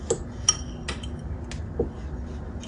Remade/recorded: recorded